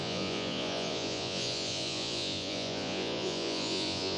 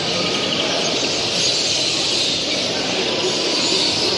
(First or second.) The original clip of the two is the second